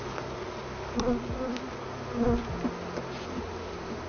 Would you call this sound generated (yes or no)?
no